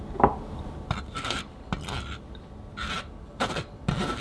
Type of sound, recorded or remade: recorded